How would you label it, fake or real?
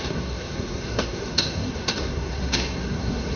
fake